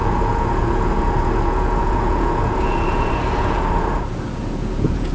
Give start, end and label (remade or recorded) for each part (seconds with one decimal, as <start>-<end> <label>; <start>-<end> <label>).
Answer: 0.0-5.1 remade